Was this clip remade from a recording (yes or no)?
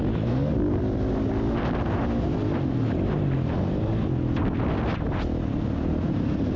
no